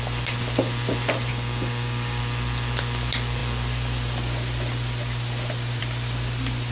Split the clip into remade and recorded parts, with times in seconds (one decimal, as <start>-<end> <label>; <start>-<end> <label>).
0.0-1.3 recorded; 1.3-2.2 remade; 2.2-6.7 recorded